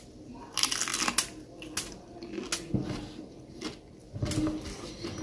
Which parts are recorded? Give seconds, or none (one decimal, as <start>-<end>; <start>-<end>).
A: 0.0-5.2